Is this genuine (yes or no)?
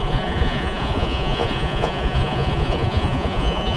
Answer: no